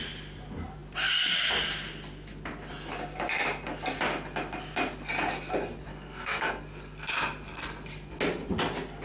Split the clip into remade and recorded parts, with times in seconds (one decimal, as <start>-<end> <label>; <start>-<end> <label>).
0.0-5.9 recorded; 5.9-6.6 remade; 6.6-9.0 recorded